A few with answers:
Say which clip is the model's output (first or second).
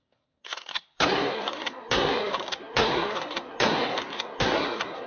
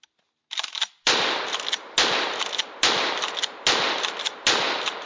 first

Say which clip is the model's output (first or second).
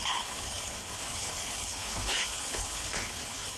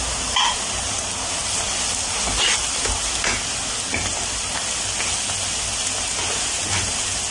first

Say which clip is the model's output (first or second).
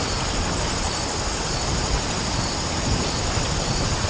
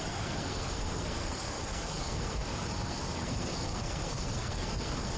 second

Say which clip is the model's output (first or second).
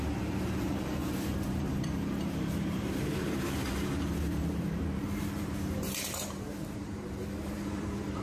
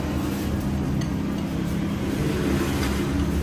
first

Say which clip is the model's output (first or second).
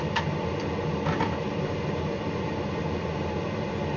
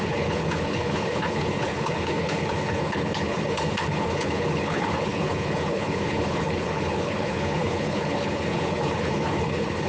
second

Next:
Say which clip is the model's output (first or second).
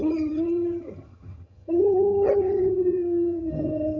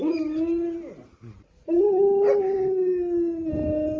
first